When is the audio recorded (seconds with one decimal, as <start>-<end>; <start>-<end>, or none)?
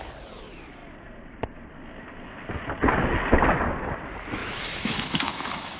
0.0-4.4